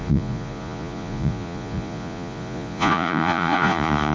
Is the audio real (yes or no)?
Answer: no